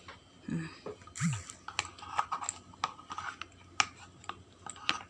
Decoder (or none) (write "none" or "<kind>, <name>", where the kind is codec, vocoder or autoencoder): none